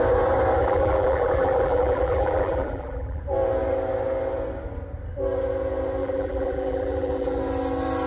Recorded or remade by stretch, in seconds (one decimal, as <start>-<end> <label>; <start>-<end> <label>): 0.0-0.6 recorded; 0.6-3.2 remade; 3.2-6.0 recorded; 6.0-7.4 remade; 7.4-8.1 recorded